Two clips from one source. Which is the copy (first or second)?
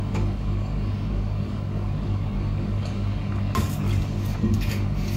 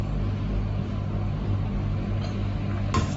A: first